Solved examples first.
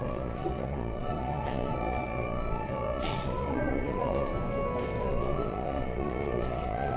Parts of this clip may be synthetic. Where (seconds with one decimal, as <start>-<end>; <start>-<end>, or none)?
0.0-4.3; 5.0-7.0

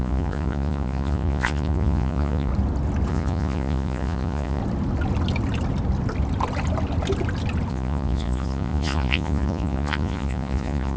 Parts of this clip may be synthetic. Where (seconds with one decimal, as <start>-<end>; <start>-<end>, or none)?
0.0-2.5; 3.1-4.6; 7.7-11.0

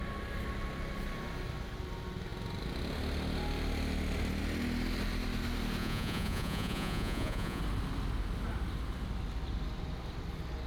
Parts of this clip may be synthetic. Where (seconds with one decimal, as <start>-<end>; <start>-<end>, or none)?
5.8-7.6